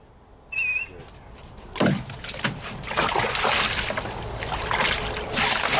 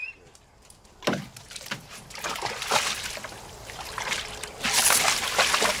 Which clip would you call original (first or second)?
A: first